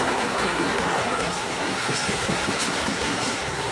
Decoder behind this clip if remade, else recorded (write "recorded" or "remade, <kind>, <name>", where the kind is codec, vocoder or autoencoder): remade, codec, SNAC